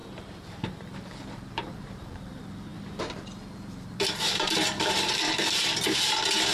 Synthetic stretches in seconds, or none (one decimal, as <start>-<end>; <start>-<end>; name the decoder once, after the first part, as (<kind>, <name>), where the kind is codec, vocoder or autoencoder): 0.0-6.5 (vocoder, BigVGAN v2)